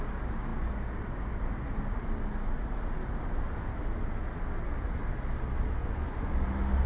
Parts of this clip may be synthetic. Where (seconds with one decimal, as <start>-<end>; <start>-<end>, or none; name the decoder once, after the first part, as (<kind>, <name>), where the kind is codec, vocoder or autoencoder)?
5.8-6.3 (vocoder, Vocos)